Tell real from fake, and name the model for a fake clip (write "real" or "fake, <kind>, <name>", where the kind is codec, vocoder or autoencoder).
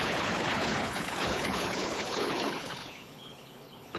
fake, codec, HILCodec